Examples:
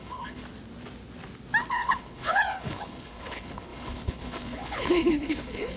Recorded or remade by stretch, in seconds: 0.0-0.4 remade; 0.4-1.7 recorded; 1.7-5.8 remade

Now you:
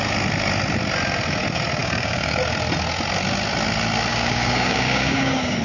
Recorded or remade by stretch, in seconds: 0.0-1.8 recorded; 1.8-2.4 remade; 2.4-4.1 recorded; 4.1-5.6 remade